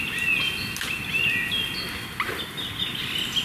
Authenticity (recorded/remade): recorded